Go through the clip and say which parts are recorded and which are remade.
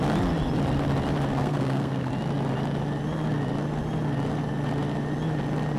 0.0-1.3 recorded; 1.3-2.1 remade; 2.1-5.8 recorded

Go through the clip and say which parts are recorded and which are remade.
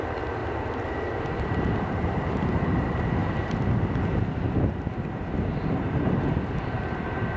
0.0-0.4 remade; 0.4-1.2 recorded; 1.2-3.2 remade; 3.2-7.4 recorded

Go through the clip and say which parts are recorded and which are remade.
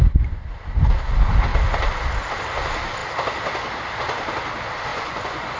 0.0-4.9 recorded; 4.9-5.6 remade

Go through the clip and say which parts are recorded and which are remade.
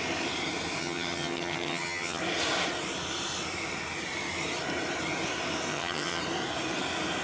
0.0-0.8 recorded; 0.8-2.2 remade; 2.2-5.7 recorded; 5.7-6.2 remade; 6.2-7.2 recorded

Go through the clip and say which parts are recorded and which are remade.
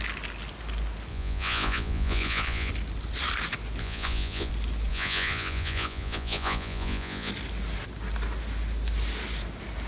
0.0-1.1 recorded; 1.1-2.7 remade; 2.7-3.8 recorded; 3.8-4.5 remade; 4.5-4.9 recorded; 4.9-7.3 remade; 7.3-9.9 recorded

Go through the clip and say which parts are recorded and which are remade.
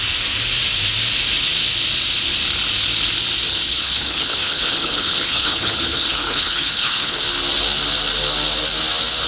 0.0-3.5 recorded; 3.5-7.2 remade; 7.2-9.3 recorded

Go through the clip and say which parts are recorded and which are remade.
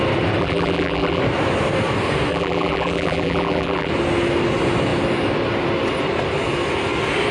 0.0-0.4 recorded; 0.4-1.2 remade; 1.2-2.3 recorded; 2.3-3.9 remade; 3.9-7.3 recorded